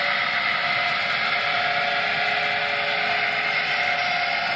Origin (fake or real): real